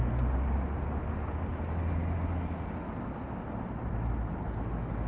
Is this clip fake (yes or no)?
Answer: no